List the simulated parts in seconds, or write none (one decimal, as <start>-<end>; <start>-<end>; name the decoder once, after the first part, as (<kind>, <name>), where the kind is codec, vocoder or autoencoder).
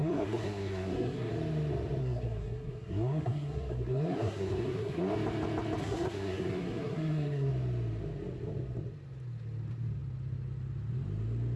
0.0-1.3 (codec, SNAC); 2.0-5.0; 5.8-7.5